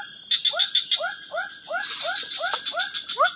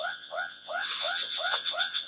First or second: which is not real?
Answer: second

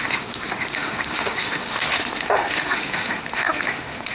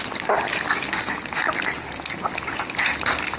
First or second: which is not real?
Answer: first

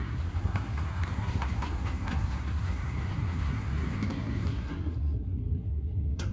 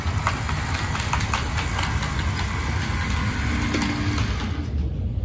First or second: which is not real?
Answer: first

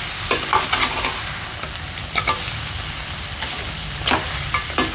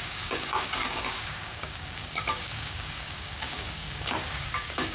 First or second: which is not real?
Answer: second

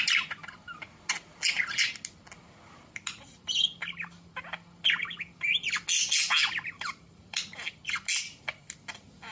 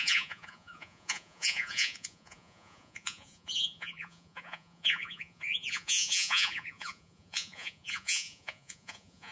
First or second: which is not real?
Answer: second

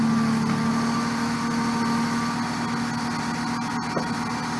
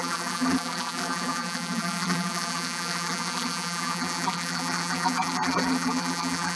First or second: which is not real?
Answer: second